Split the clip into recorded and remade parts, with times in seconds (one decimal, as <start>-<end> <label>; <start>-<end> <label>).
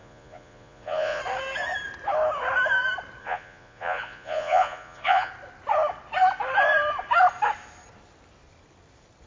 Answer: 0.0-1.2 remade; 1.2-3.2 recorded; 3.2-5.3 remade; 5.3-9.3 recorded